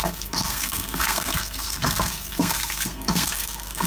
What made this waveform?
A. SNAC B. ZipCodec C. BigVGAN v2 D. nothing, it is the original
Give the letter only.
A